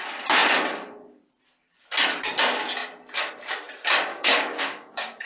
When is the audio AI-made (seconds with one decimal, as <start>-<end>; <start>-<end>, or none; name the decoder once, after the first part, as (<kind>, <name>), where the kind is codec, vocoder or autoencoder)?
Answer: 4.1-5.3 (codec, DAC)